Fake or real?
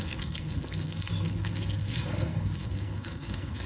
fake